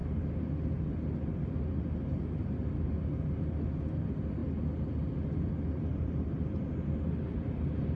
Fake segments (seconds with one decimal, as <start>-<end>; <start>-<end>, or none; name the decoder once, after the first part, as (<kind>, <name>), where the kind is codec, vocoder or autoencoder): 5.9-6.7 (vocoder, BigVGAN v2)